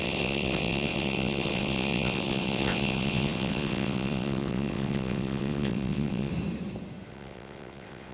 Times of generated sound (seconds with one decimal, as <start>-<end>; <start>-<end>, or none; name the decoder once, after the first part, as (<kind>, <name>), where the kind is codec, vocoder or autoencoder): 0.0-6.3 (vocoder, WaveNeXt); 7.1-8.1